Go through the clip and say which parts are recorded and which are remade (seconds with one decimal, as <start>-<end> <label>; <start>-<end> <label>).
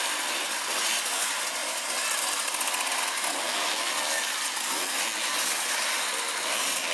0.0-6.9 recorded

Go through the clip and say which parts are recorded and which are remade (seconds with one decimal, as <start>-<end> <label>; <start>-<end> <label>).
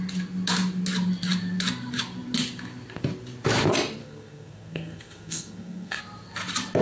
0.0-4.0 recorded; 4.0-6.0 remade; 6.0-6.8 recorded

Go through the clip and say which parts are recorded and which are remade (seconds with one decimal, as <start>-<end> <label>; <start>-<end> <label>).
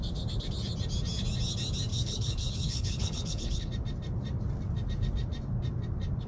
0.0-1.9 recorded; 1.9-3.7 remade; 3.7-6.3 recorded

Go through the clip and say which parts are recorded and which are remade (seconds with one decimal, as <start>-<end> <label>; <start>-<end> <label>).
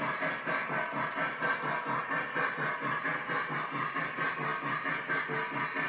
0.0-5.9 recorded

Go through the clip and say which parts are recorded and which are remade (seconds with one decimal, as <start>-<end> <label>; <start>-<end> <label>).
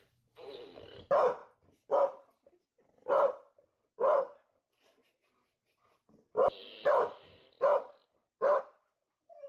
0.0-9.5 recorded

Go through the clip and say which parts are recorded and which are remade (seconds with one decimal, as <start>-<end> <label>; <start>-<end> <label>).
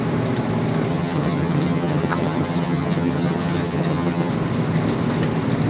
0.0-0.9 recorded; 0.9-4.3 remade; 4.3-5.7 recorded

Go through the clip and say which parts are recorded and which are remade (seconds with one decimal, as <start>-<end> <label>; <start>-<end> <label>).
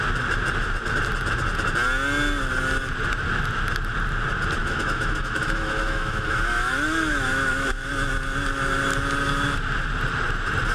0.0-4.6 recorded; 4.6-7.9 remade; 7.9-10.7 recorded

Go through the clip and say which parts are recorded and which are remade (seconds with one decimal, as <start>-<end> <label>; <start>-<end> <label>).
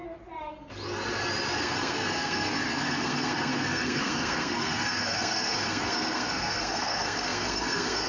0.0-1.6 recorded; 1.6-8.1 remade